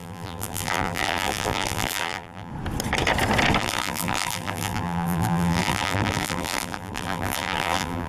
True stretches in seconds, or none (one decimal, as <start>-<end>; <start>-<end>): 2.5-3.6